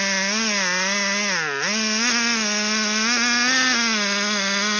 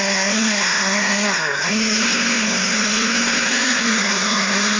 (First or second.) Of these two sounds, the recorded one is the first